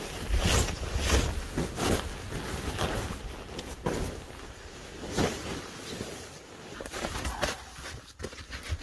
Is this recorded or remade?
recorded